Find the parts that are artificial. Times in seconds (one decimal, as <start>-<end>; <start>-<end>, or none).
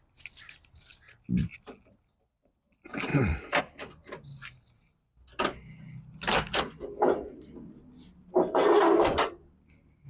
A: none